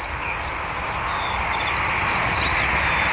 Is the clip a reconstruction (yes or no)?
no